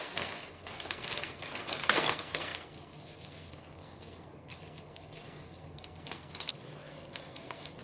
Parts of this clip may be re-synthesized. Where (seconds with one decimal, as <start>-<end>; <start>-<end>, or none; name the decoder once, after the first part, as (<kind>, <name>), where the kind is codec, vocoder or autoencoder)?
0.0-7.8 (codec, SNAC)